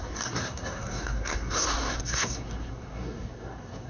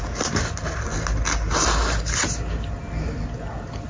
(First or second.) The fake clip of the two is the first